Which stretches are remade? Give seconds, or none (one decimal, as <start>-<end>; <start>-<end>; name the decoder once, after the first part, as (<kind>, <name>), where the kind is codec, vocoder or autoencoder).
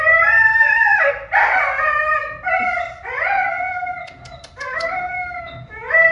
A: 0.5-1.1 (autoencoder, DAC-VAE); 4.7-5.5